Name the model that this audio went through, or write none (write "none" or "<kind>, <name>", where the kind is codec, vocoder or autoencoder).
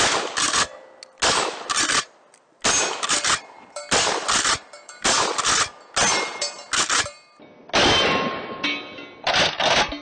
none